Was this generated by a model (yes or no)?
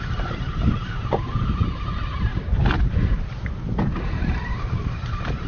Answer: yes